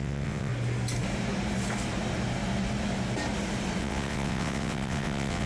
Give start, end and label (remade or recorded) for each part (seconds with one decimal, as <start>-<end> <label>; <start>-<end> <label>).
0.0-0.5 remade; 0.5-3.8 recorded; 3.8-5.5 remade